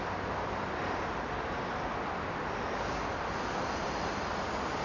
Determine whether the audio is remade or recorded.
recorded